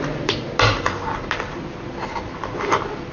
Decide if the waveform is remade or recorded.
recorded